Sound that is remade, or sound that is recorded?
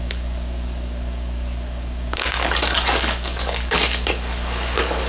remade